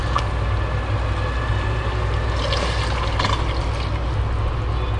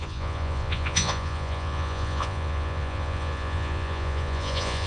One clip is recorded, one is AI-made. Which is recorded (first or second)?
first